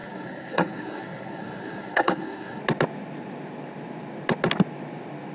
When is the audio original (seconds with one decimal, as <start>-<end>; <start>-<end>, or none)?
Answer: 2.6-5.3